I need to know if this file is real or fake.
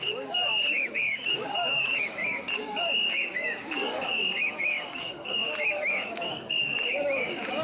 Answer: fake